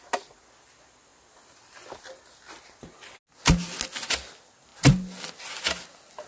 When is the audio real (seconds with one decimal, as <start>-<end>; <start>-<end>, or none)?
0.0-6.3